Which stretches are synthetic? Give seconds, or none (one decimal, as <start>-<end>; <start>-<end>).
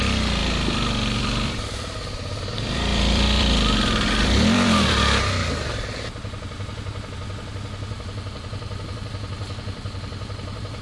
0.4-5.0